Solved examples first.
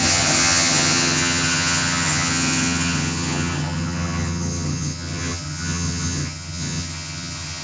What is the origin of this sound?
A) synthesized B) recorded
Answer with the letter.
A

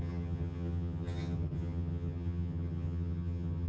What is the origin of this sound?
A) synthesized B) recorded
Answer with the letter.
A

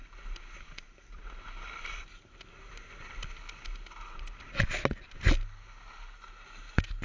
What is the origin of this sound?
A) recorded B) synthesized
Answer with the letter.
A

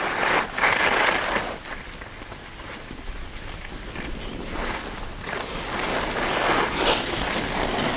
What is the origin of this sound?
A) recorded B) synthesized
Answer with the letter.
A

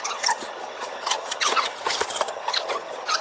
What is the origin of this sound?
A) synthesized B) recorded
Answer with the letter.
A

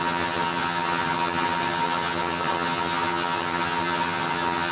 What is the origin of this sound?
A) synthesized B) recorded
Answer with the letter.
A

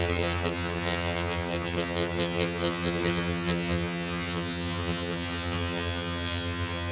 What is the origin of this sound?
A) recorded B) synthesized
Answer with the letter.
B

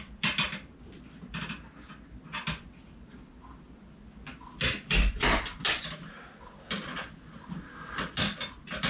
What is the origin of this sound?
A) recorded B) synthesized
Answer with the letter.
A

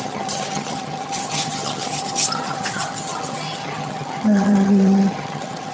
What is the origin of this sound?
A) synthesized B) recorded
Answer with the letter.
A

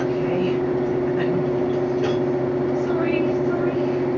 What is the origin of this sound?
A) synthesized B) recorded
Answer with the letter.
B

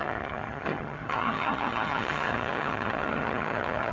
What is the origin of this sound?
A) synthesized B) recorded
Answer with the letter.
A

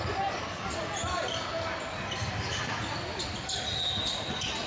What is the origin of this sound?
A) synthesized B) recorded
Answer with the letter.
B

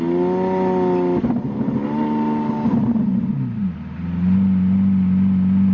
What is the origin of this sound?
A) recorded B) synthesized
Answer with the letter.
A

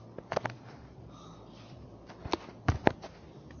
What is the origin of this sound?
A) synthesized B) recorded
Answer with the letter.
B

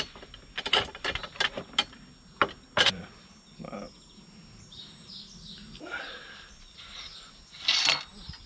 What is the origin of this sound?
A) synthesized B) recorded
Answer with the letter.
B